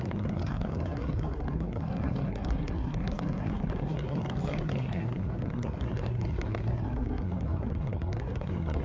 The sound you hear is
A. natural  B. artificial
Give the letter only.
B